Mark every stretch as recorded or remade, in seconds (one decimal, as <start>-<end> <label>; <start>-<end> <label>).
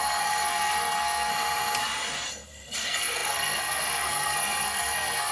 0.0-1.3 remade; 1.3-2.3 recorded; 2.3-5.3 remade